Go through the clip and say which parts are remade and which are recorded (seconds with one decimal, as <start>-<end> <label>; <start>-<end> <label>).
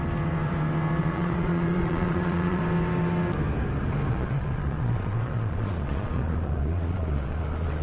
0.0-1.0 recorded; 1.0-2.6 remade; 2.6-4.1 recorded; 4.1-7.8 remade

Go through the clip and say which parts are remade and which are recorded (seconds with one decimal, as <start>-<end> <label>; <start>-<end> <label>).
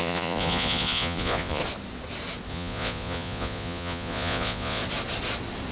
0.0-1.6 remade; 1.6-2.5 recorded; 2.5-4.8 remade; 4.8-5.7 recorded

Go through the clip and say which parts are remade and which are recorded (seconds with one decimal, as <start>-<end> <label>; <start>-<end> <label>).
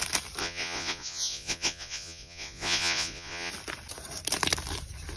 0.0-0.4 recorded; 0.4-3.5 remade; 3.5-5.2 recorded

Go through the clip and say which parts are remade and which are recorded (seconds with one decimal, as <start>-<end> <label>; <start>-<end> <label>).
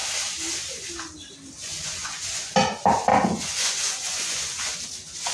0.0-1.6 recorded; 1.6-2.5 remade; 2.5-3.1 recorded; 3.1-4.8 remade; 4.8-5.3 recorded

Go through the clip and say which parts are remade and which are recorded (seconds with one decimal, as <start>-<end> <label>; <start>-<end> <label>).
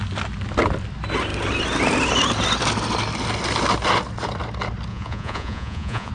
0.0-4.9 recorded; 4.9-6.1 remade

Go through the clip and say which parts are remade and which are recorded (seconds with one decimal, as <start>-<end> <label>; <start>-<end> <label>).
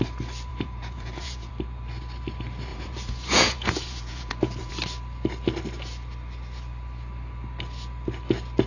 0.0-0.5 recorded; 0.5-1.5 remade; 1.5-2.7 recorded; 2.7-4.7 remade; 4.7-8.7 recorded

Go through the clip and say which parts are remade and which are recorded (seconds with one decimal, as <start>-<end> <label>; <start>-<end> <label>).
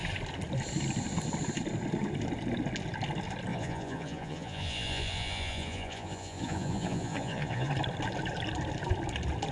0.0-3.5 recorded; 3.5-7.7 remade; 7.7-9.5 recorded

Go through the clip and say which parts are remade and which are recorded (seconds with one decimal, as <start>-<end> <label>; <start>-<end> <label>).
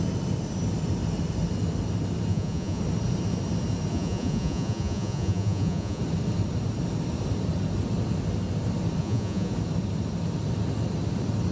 0.0-2.3 recorded; 2.3-2.8 remade; 2.8-3.9 recorded; 3.9-6.0 remade; 6.0-9.0 recorded; 9.0-9.5 remade; 9.5-11.5 recorded